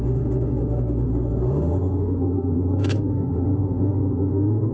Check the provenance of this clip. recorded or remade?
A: remade